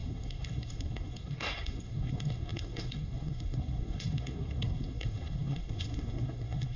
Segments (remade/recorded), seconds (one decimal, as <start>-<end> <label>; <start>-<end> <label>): 0.0-6.8 remade